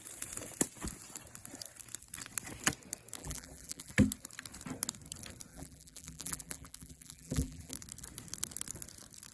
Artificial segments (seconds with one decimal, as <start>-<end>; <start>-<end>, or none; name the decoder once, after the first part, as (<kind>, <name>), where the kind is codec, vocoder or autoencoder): 3.2-3.9 (vocoder, BigVGAN v2); 5.5-7.7